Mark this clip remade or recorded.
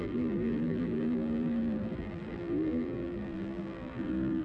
remade